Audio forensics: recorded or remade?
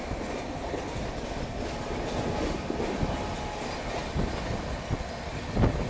recorded